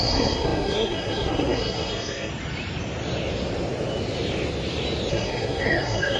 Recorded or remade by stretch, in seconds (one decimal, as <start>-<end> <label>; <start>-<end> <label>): 0.0-2.3 remade; 2.3-5.1 recorded; 5.1-6.2 remade